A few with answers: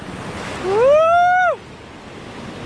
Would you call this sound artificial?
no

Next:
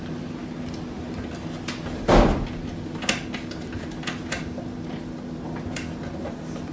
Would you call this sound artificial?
no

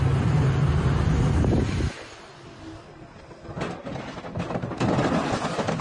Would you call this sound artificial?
no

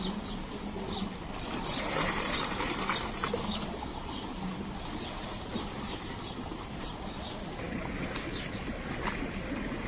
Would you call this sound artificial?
no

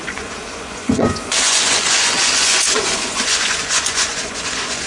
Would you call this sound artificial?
yes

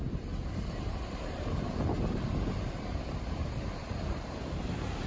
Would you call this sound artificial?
no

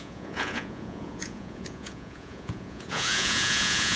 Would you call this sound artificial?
yes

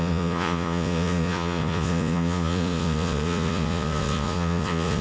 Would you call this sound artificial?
yes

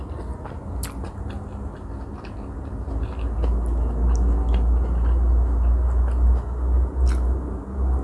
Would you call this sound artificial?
no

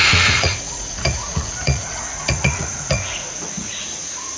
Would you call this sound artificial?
yes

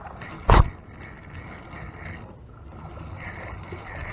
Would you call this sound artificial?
no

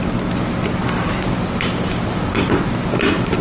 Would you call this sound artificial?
no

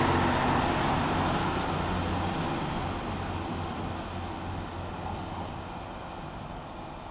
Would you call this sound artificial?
no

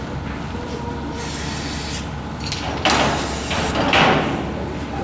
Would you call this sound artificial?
no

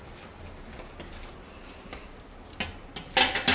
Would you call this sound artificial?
no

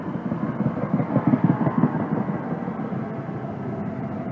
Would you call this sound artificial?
no